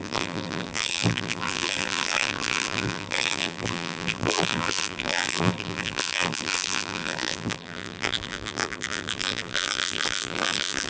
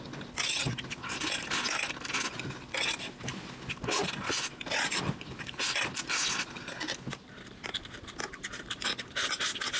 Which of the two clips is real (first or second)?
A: second